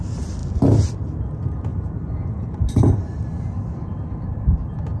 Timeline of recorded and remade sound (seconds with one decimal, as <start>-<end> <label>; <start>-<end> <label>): 0.0-1.7 recorded; 1.7-4.4 remade; 4.4-5.0 recorded